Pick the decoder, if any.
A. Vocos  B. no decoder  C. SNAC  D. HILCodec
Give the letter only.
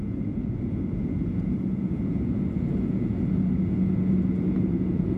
A